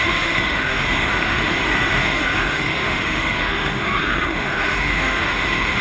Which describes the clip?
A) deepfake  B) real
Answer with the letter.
A